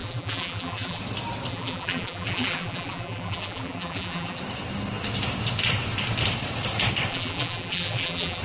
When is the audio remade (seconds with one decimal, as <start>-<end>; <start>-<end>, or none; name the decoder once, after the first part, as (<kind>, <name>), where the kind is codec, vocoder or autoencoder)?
0.0-1.0 (vocoder, BigVGAN v2); 1.5-4.4; 7.1-8.4